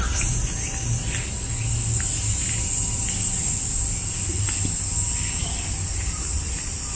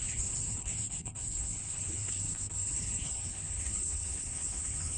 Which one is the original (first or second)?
first